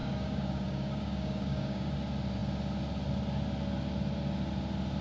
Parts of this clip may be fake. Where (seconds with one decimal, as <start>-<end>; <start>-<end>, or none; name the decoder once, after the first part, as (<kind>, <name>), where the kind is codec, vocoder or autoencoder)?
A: 0.0-1.9 (codec, DAC)